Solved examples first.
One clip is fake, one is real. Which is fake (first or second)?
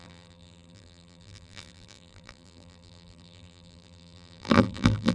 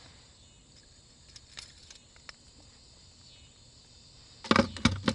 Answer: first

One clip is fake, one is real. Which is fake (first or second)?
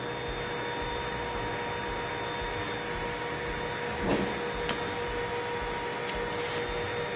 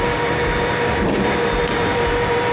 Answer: second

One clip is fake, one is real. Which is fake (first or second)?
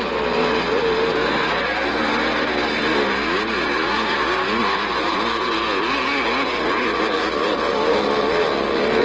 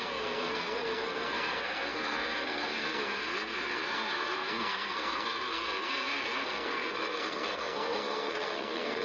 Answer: second